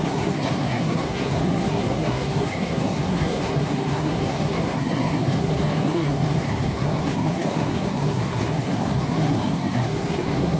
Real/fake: fake